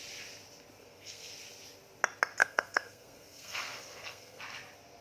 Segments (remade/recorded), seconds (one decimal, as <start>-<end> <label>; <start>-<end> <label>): 0.0-0.8 recorded; 0.8-1.3 remade; 1.3-2.4 recorded; 2.4-4.4 remade; 4.4-5.0 recorded